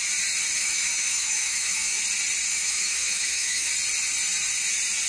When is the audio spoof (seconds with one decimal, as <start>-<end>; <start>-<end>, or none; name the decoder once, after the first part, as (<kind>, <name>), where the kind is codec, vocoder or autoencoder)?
0.6-2.0 (autoencoder, DAC-VAE); 2.5-3.7